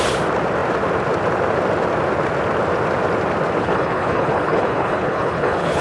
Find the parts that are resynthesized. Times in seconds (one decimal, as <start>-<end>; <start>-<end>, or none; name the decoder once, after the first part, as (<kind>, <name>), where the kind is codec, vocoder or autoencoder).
3.6-5.8 (codec, HILCodec)